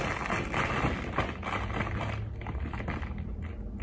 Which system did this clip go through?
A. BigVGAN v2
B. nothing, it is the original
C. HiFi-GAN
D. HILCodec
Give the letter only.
B